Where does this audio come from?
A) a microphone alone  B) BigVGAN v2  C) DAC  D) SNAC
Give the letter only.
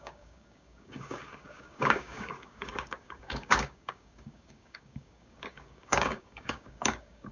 C